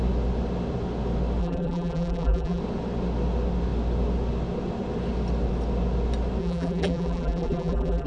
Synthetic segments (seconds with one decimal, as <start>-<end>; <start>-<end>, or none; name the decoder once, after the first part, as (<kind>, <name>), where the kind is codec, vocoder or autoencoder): 1.4-2.6 (vocoder, BigVGAN v2); 6.4-8.1